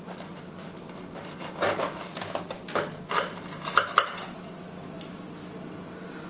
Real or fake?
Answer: real